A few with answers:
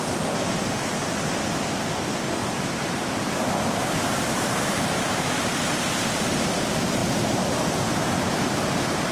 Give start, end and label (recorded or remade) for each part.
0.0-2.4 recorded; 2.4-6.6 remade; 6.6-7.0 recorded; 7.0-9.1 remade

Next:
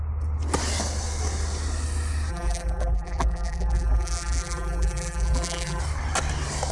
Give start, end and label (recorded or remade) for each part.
0.0-2.3 recorded; 2.3-5.8 remade; 5.8-6.7 recorded

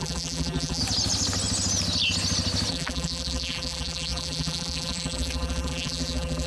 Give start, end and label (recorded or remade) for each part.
0.0-0.8 remade; 0.8-2.7 recorded; 2.7-6.5 remade

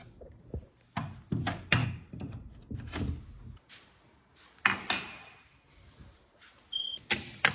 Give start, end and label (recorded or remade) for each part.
0.0-1.8 remade; 1.8-5.1 recorded; 5.1-7.5 remade

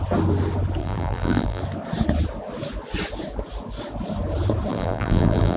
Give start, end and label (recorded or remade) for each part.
0.0-0.8 recorded; 0.8-1.6 remade; 1.6-4.7 recorded; 4.7-5.6 remade

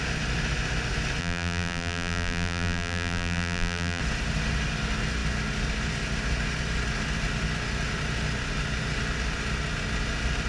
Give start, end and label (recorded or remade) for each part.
0.0-1.2 recorded; 1.2-4.0 remade; 4.0-10.5 recorded

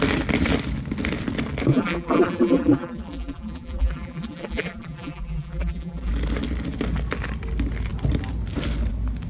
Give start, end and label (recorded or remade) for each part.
0.0-1.7 recorded; 1.7-6.1 remade; 6.1-9.3 recorded

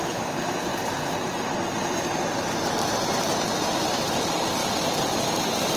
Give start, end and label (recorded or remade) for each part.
0.0-0.7 remade; 0.7-1.4 recorded; 1.4-4.6 remade; 4.6-5.8 recorded